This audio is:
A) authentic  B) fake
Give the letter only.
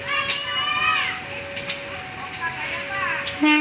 A